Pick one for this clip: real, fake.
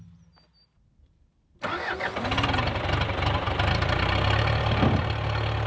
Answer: real